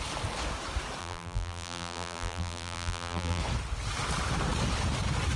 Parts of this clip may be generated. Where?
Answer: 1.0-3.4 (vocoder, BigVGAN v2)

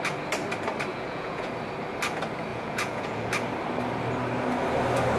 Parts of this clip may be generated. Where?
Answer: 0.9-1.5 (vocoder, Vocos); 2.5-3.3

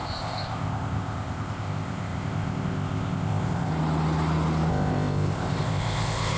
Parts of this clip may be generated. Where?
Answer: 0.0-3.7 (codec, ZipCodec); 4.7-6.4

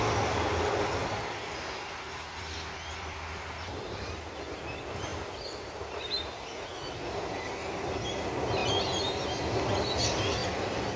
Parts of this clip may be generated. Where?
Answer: 1.0-4.6 (vocoder, BigVGAN v2)

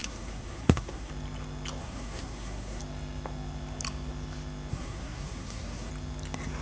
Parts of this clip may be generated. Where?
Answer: 0.0-1.1 (codec, SNAC); 1.8-2.8; 4.7-5.9

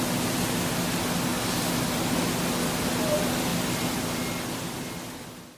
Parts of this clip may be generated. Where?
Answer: none

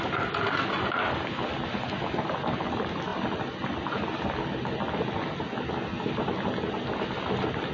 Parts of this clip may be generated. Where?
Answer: none